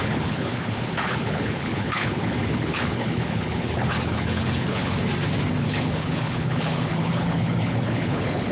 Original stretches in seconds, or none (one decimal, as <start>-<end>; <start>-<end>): 5.1-5.6